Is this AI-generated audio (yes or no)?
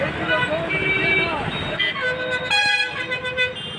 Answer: no